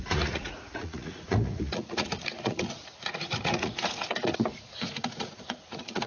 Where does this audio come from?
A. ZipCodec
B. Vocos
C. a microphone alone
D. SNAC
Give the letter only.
B